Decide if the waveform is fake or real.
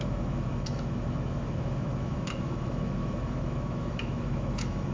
fake